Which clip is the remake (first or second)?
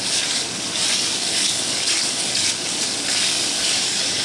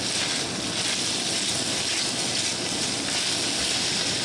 first